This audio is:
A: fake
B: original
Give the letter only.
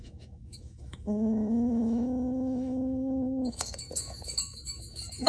A